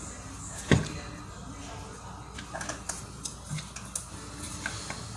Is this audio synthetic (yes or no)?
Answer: no